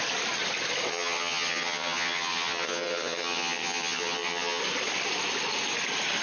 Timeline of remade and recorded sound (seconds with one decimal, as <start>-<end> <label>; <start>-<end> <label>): 0.0-0.9 recorded; 0.9-4.6 remade; 4.6-6.2 recorded